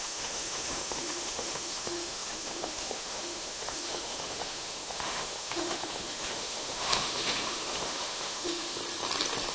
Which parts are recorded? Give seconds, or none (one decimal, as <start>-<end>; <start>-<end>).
8.8-9.5